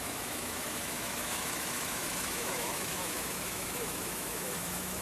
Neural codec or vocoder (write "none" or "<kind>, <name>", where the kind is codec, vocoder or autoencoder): autoencoder, DAC-VAE